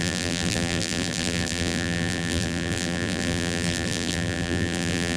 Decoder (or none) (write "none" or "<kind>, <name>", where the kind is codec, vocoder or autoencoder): vocoder, BigVGAN v2